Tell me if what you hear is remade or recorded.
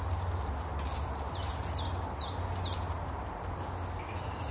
recorded